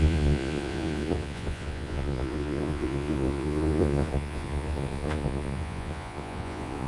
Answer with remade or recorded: remade